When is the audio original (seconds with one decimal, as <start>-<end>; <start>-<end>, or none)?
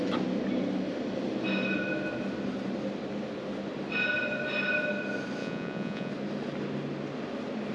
0.0-5.4; 6.1-7.7